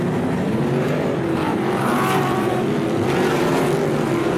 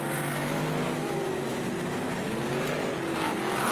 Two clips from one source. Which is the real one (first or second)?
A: second